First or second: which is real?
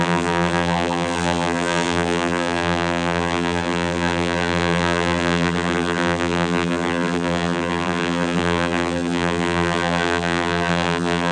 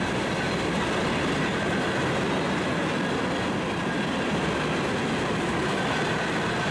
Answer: second